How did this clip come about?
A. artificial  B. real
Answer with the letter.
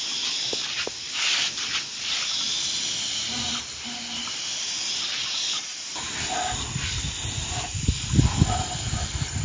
B